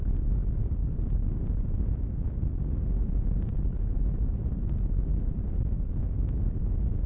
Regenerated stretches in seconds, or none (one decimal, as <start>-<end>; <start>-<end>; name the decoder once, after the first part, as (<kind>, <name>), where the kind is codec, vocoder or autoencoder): 0.8-1.6 (vocoder, BigVGAN v2); 3.0-5.7